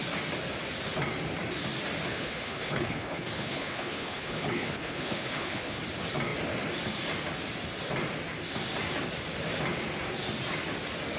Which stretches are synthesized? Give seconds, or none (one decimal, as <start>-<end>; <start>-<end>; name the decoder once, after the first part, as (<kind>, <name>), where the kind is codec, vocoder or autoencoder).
2.1-5.8 (codec, HILCodec)